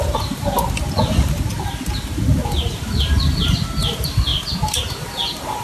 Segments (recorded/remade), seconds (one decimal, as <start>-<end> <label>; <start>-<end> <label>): 0.0-0.4 remade; 0.4-3.8 recorded; 3.8-4.3 remade; 4.3-5.0 recorded; 5.0-5.6 remade

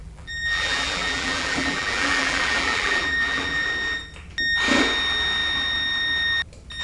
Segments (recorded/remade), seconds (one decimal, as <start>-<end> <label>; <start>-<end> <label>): 0.0-3.7 remade; 3.7-6.8 recorded

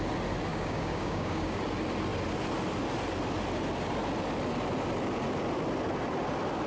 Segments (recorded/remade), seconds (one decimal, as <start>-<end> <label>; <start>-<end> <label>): 0.0-0.5 recorded; 0.5-1.6 remade; 1.6-6.7 recorded

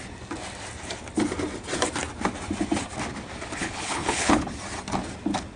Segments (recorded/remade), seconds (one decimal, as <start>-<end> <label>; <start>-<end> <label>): 0.0-3.6 recorded; 3.6-4.4 remade; 4.4-5.6 recorded

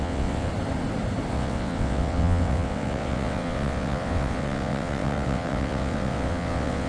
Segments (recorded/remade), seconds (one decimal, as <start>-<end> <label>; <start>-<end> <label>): 0.0-0.5 remade; 0.5-1.3 recorded; 1.3-6.9 remade

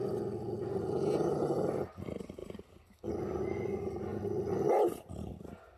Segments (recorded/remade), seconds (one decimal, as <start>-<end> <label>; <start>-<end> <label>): 0.0-5.8 recorded